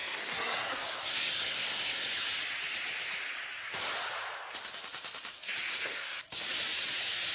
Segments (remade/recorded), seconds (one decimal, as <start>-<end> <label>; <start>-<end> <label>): 0.0-2.1 remade; 2.1-5.7 recorded; 5.7-6.2 remade; 6.2-7.3 recorded